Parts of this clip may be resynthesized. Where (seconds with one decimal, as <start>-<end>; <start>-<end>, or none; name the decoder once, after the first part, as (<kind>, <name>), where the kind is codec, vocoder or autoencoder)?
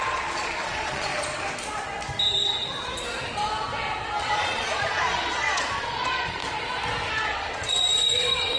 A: 0.0-1.1 (vocoder, Vocos); 4.2-6.4; 7.1-8.6